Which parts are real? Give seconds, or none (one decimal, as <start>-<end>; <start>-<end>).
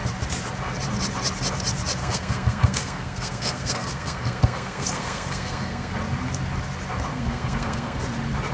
0.0-2.0; 5.9-7.1; 8.0-8.5